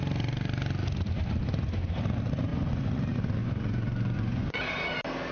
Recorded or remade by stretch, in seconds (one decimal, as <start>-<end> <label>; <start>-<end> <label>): 0.0-2.5 recorded; 2.5-3.0 remade; 3.0-3.4 recorded; 3.4-4.6 remade; 4.6-5.3 recorded